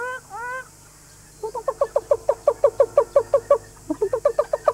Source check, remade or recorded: recorded